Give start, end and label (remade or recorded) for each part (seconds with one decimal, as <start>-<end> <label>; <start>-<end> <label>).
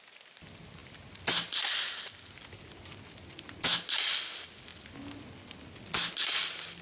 0.0-6.8 recorded